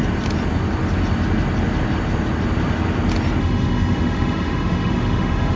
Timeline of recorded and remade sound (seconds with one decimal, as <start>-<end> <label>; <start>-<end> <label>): 0.0-3.4 recorded; 3.4-5.6 remade